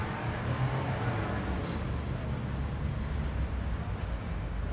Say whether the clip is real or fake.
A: real